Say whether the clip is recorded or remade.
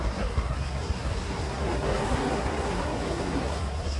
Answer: remade